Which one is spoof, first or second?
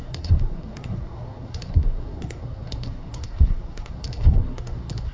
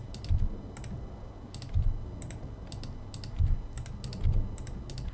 first